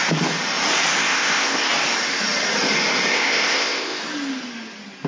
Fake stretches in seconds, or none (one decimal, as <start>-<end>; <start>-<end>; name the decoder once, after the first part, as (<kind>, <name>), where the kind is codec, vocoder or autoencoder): 1.0-1.7 (codec, ZipCodec); 3.1-4.0